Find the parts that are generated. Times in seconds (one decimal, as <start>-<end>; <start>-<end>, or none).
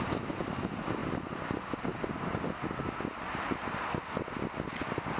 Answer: none